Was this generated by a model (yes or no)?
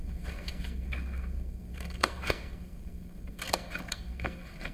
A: yes